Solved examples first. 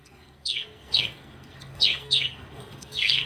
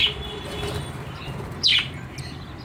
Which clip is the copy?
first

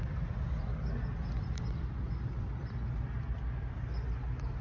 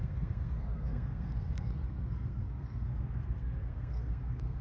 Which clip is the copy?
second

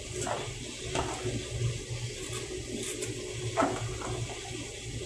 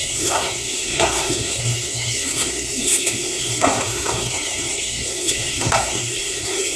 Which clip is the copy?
second